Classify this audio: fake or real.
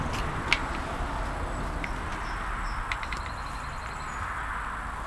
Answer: real